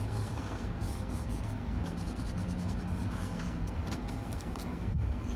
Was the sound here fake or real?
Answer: fake